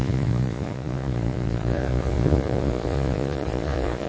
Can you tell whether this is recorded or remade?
remade